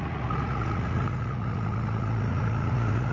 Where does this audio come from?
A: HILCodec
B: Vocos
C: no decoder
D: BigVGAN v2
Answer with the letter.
B